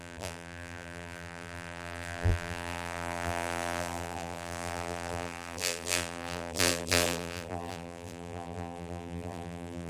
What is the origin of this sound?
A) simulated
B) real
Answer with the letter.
A